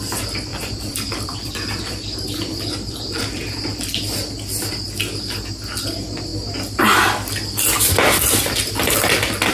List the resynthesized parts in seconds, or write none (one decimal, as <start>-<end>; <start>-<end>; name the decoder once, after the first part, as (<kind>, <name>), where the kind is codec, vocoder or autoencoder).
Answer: 0.5-3.6 (vocoder, BigVGAN v2)